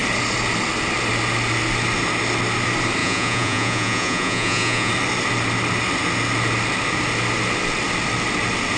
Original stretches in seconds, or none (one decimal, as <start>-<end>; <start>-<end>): 0.0-3.0; 4.9-8.8